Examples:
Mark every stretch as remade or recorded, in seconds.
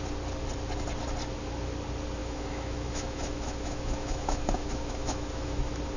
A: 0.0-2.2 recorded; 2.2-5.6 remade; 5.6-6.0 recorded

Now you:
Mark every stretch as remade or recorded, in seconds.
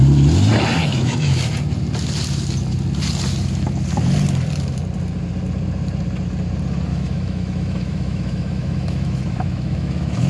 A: 0.0-0.8 recorded; 0.8-1.4 remade; 1.4-6.9 recorded; 6.9-10.3 remade